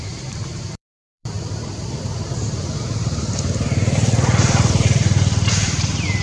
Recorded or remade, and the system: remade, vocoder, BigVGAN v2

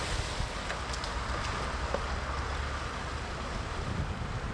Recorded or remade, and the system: recorded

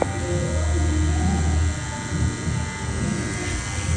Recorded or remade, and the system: recorded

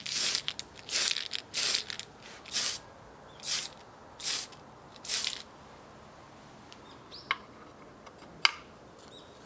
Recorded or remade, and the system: recorded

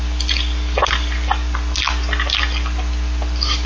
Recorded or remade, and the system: recorded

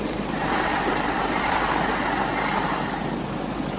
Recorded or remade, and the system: remade, vocoder, BigVGAN v2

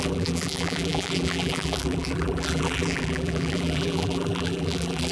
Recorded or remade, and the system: remade, vocoder, BigVGAN v2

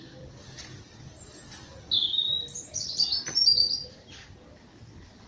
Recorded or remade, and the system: recorded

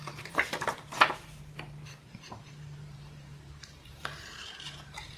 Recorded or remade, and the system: remade, vocoder, BigVGAN v2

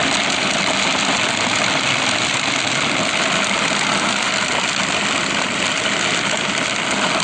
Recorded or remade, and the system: recorded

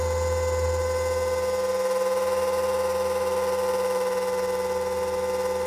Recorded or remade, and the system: recorded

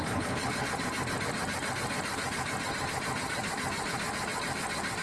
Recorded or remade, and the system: recorded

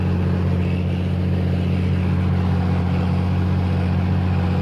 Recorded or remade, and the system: recorded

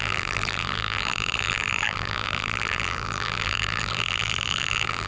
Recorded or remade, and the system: remade, vocoder, BigVGAN v2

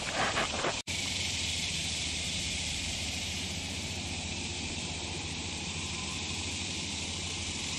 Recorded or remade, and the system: remade, vocoder, BigVGAN v2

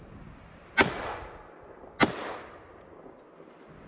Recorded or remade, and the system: recorded